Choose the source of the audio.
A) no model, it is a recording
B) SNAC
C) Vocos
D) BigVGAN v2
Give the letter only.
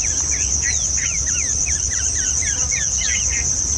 A